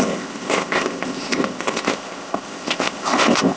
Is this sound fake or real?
fake